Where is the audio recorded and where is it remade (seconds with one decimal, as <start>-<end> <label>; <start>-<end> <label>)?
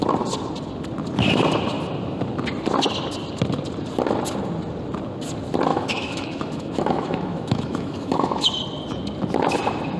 0.0-5.7 recorded; 5.7-8.5 remade; 8.5-10.0 recorded